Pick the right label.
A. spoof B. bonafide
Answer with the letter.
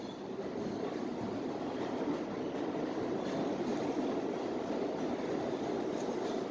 B